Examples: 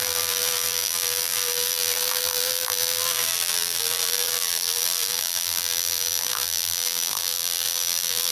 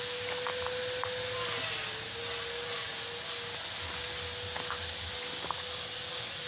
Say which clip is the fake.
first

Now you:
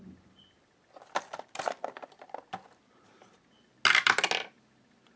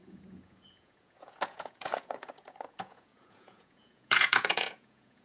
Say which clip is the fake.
second